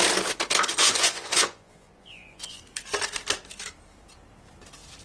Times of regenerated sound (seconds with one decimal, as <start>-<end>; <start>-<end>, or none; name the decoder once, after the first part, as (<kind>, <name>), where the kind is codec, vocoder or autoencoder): 0.8-2.6 (vocoder, Vocos)